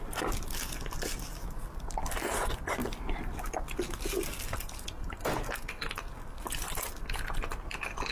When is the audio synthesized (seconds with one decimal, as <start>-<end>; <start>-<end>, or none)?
none